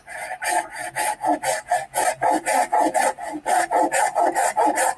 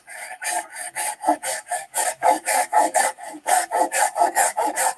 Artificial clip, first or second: second